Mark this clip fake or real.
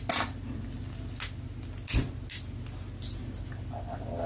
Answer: real